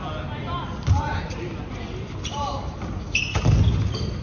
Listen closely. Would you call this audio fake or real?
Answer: real